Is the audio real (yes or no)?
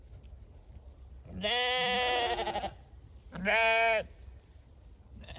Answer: yes